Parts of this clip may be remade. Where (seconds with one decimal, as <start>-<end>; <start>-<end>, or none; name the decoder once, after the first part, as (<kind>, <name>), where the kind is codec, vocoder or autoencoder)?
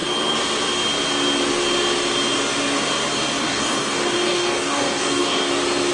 3.4-5.5 (codec, DAC)